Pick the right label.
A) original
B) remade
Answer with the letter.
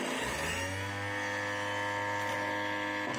A